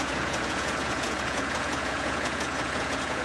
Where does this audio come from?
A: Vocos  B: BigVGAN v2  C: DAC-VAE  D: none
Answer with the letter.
A